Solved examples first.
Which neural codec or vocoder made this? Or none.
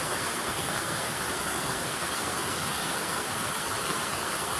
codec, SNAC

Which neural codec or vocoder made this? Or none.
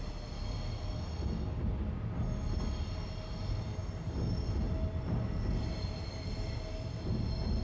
none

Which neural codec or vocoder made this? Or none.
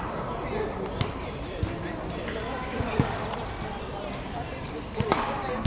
vocoder, BigVGAN v2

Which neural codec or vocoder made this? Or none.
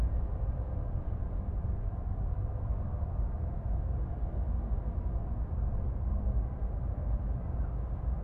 none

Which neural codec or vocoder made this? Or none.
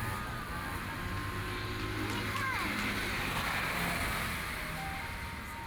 none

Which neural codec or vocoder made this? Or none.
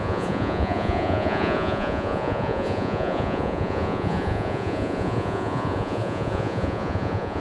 vocoder, Vocos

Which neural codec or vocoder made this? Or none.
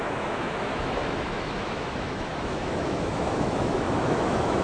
autoencoder, DAC-VAE